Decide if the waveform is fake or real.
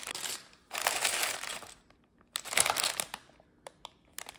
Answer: real